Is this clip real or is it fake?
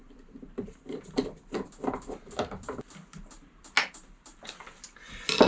real